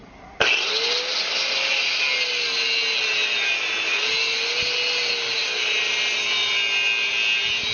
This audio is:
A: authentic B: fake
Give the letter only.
A